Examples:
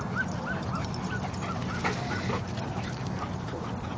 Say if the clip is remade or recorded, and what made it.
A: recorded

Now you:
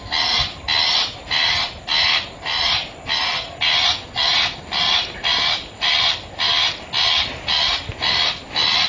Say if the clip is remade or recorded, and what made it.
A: recorded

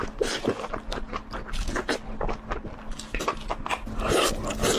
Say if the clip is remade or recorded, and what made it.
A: recorded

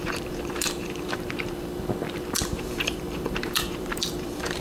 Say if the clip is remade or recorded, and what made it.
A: remade, vocoder, BigVGAN v2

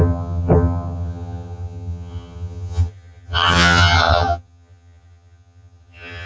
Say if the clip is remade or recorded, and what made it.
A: remade, vocoder, HiFi-GAN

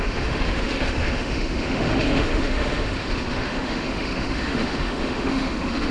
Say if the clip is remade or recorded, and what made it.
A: remade, autoencoder, DAC-VAE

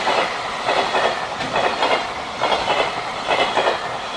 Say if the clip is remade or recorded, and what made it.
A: remade, vocoder, BigVGAN v2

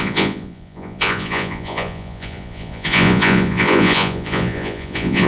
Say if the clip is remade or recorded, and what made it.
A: remade, vocoder, Vocos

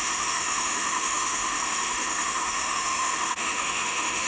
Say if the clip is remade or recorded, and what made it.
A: remade, autoencoder, DAC-VAE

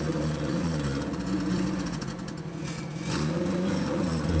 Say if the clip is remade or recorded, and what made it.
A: remade, vocoder, Vocos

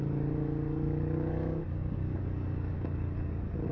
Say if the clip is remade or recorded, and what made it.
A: remade, codec, DAC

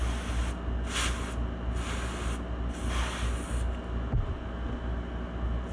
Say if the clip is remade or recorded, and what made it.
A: recorded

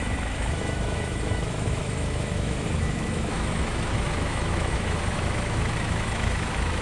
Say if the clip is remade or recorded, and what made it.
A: remade, autoencoder, DAC-VAE